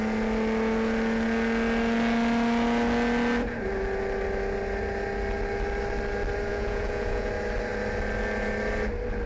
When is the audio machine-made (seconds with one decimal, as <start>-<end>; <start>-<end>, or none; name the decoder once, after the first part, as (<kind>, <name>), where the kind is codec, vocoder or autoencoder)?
6.5-7.3 (vocoder, Vocos)